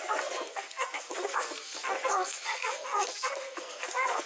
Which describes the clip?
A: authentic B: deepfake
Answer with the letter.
B